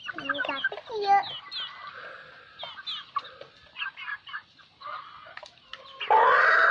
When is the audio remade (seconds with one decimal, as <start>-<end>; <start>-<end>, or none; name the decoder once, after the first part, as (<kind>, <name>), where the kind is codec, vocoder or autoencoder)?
none